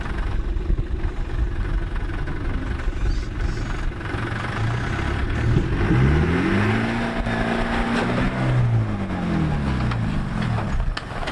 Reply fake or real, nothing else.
real